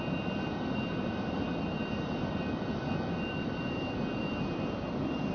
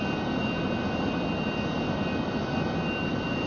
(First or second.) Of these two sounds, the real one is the second